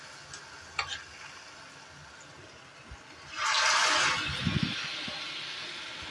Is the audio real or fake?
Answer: real